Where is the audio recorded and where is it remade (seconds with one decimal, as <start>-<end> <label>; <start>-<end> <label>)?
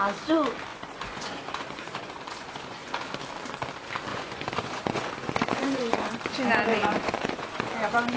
0.0-0.7 recorded; 0.7-2.9 remade; 2.9-4.1 recorded; 4.1-6.1 remade; 6.1-6.7 recorded; 6.7-7.7 remade; 7.7-8.2 recorded